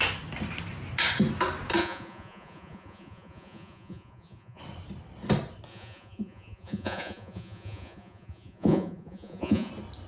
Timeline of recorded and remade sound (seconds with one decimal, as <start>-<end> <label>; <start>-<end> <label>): 0.0-1.8 recorded; 1.8-4.6 remade; 4.6-5.7 recorded; 5.7-9.7 remade; 9.7-10.1 recorded